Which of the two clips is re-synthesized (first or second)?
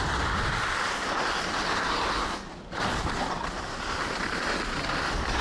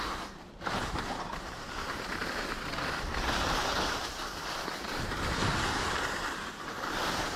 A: second